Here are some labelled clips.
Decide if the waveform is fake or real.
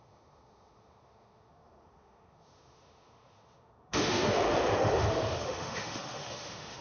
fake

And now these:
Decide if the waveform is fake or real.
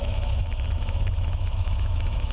fake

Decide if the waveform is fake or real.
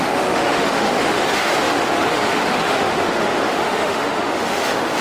fake